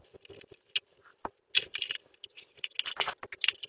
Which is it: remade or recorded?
recorded